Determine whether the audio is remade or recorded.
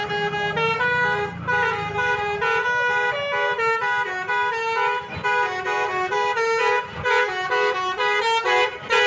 recorded